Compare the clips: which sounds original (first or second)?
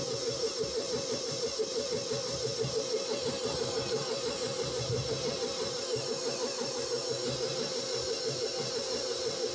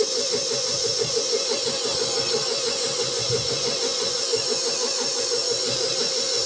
first